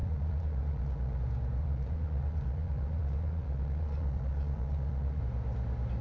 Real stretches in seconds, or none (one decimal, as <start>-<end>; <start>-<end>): 1.2-1.6; 5.2-6.0